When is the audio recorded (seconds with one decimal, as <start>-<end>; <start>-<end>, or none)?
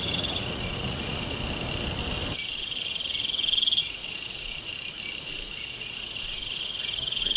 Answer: 1.4-3.8; 4.7-5.2